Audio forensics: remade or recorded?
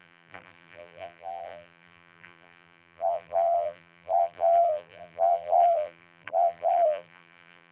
remade